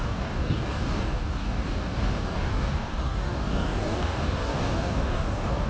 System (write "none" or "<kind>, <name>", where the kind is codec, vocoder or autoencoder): codec, DAC